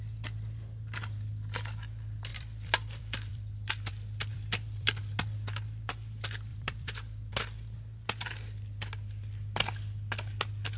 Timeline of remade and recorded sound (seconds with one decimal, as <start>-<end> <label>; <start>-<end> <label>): 0.0-2.3 recorded; 2.3-3.9 remade; 3.9-4.3 recorded; 4.3-5.0 remade; 5.0-6.5 recorded; 6.5-7.3 remade; 7.3-10.8 recorded